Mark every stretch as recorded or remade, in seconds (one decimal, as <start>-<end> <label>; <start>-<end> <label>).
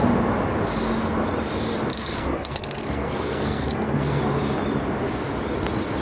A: 0.0-1.9 recorded; 1.9-4.2 remade; 4.2-6.0 recorded